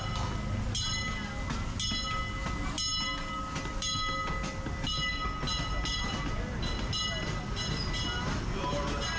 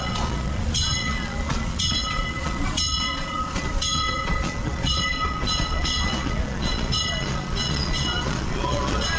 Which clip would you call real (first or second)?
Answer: first